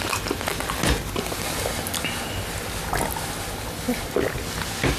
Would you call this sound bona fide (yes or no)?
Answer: yes